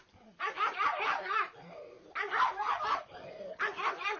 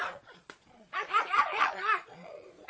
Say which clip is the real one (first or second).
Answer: first